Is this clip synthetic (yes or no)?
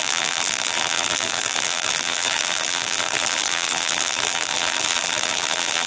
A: yes